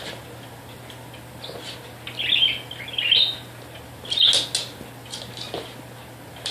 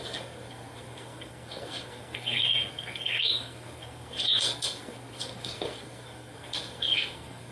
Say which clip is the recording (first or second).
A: first